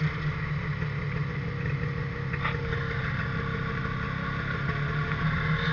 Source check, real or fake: real